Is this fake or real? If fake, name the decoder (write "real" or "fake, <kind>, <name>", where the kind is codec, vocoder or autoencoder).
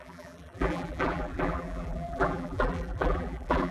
fake, vocoder, BigVGAN v2